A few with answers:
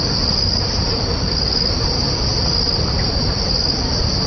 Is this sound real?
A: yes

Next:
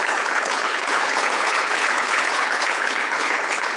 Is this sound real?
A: no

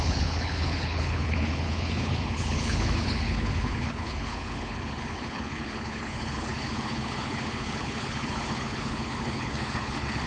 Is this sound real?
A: no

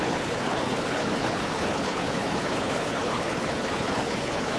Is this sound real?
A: no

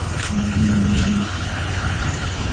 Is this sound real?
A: no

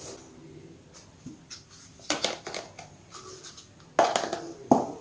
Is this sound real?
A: yes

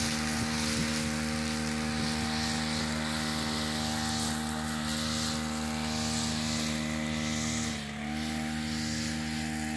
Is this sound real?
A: yes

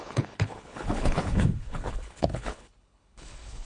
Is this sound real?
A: no